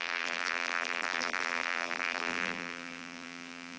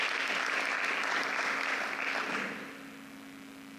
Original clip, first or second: second